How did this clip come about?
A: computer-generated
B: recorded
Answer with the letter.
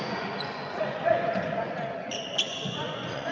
A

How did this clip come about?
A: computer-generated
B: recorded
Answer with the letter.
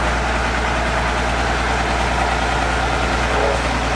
B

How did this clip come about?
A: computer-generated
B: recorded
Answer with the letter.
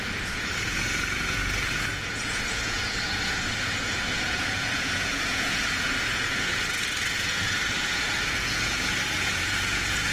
A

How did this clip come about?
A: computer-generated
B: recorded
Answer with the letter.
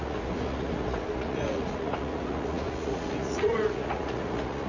A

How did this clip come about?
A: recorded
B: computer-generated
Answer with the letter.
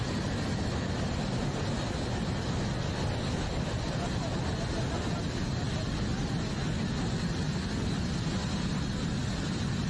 A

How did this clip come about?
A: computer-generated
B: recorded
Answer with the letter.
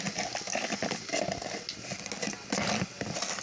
B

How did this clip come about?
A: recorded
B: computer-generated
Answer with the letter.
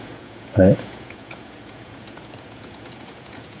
B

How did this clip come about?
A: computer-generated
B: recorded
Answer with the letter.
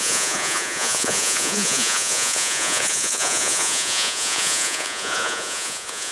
A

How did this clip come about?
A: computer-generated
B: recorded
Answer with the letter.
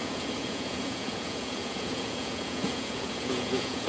A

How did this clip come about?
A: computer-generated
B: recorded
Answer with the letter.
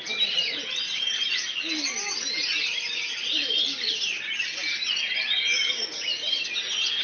B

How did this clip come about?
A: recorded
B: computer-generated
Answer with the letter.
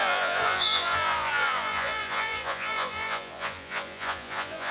B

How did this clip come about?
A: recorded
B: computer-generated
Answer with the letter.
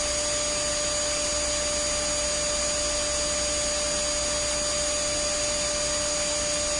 A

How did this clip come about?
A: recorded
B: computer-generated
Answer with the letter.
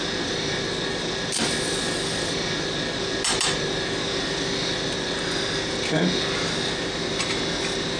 A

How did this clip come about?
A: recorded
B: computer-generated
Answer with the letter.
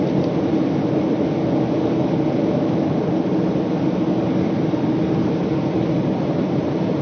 A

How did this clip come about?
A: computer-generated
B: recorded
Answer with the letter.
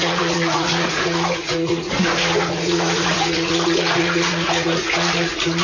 A